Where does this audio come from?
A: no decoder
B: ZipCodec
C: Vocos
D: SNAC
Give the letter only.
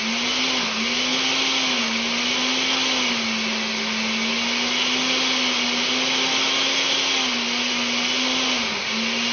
A